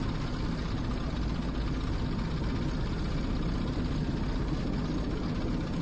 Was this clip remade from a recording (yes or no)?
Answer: no